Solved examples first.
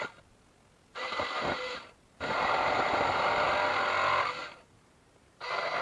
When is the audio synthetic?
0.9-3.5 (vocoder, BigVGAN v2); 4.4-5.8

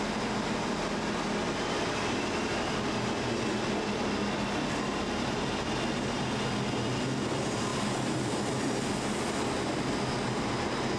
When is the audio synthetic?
none

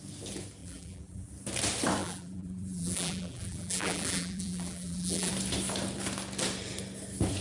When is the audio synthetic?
0.6-1.3 (vocoder, BigVGAN v2); 2.0-5.3

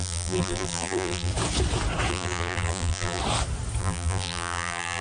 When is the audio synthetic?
0.0-1.3 (vocoder, BigVGAN v2); 2.1-3.2; 3.8-5.0